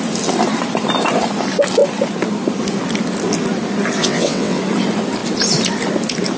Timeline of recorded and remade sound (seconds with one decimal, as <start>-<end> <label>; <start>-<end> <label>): 0.0-4.0 recorded; 4.0-4.6 remade; 4.6-6.4 recorded

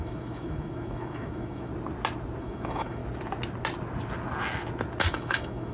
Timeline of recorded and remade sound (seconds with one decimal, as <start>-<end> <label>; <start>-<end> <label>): 0.0-1.7 remade; 1.7-2.4 recorded; 2.4-3.0 remade; 3.0-5.1 recorded; 5.1-5.7 remade

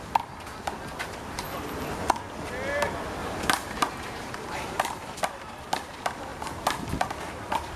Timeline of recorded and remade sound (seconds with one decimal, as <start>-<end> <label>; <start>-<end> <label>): 0.0-3.2 recorded; 3.2-4.8 remade; 4.8-7.8 recorded